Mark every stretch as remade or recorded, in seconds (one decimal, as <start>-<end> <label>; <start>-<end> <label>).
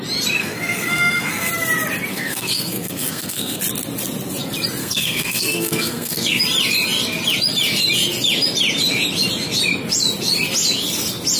0.0-0.4 recorded; 0.4-1.5 remade; 1.5-2.1 recorded; 2.1-3.6 remade; 3.6-4.8 recorded; 4.8-6.4 remade; 6.4-11.4 recorded